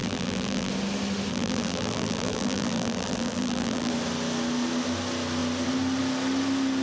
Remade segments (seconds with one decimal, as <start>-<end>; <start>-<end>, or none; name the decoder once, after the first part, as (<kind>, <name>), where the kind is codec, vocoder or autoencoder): 0.0-0.7 (vocoder, BigVGAN v2); 1.3-3.9